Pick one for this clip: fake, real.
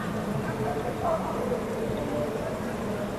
real